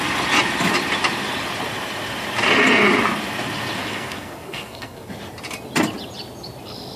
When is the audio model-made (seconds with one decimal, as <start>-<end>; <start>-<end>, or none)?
3.8-5.1